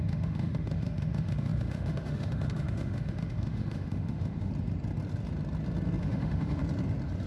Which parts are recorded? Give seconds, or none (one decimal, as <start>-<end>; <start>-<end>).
4.5-6.0; 6.6-7.3